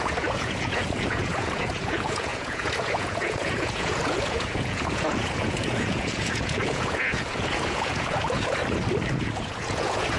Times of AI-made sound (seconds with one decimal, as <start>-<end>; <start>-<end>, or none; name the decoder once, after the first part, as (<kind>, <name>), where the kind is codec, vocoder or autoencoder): 0.0-8.6 (vocoder, Vocos); 9.1-10.2